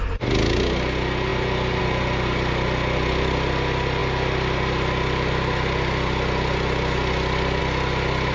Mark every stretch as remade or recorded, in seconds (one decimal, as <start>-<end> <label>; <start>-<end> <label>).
0.0-8.3 recorded